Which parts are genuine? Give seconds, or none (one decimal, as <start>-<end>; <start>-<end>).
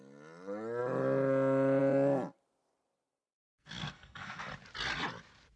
0.0-3.1; 4.4-5.6